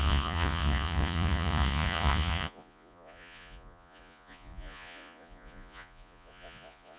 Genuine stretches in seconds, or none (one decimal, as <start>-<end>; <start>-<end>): none